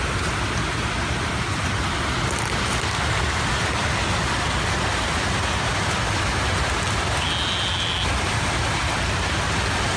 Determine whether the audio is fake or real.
real